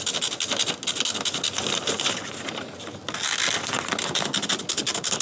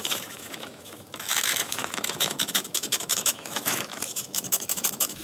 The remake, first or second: second